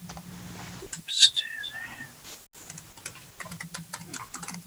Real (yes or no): yes